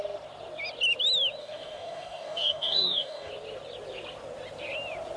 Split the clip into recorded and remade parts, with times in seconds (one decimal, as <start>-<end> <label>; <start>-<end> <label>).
0.0-1.4 recorded; 1.4-3.3 remade; 3.3-5.2 recorded